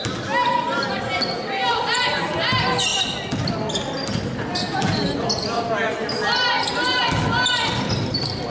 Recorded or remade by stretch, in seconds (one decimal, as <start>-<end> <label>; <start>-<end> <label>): 0.0-8.5 recorded

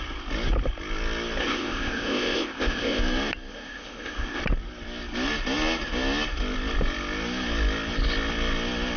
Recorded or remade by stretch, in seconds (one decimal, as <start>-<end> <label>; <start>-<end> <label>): 0.0-1.4 recorded; 1.4-3.0 remade; 3.0-3.5 recorded; 3.5-4.4 remade; 4.4-9.0 recorded

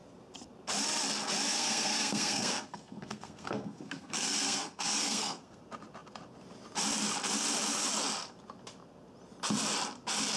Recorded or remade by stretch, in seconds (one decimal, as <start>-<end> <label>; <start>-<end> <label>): 0.0-1.5 recorded; 1.5-5.6 remade; 5.6-10.4 recorded

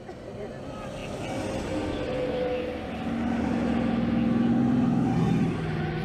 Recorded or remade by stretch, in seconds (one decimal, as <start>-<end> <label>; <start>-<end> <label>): 0.0-6.0 recorded

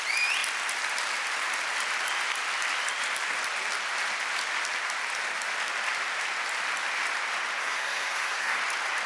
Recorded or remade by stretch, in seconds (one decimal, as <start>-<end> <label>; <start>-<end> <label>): 0.0-7.6 recorded; 7.6-8.6 remade; 8.6-9.1 recorded

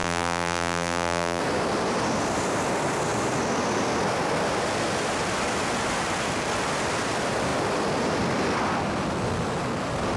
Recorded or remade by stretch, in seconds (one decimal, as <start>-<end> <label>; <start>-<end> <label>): 0.0-1.4 remade; 1.4-10.2 recorded